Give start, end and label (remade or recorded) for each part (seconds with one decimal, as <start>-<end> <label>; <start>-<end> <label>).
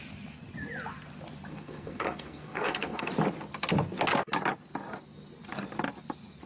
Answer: 0.0-1.5 recorded; 1.5-3.1 remade; 3.1-6.5 recorded